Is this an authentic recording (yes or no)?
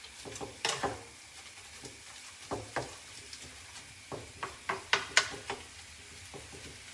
yes